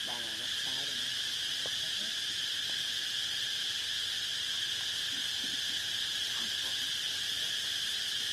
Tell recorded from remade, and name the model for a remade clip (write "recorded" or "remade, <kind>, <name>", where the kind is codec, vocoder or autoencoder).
recorded